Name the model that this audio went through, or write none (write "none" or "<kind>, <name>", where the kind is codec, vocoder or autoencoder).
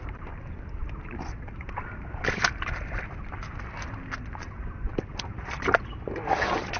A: none